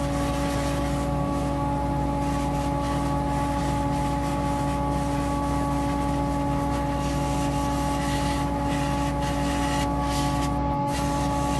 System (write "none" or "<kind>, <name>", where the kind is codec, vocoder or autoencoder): none